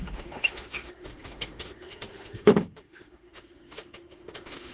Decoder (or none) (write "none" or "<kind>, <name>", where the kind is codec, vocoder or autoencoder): autoencoder, DAC-VAE